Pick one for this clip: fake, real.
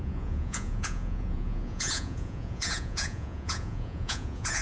fake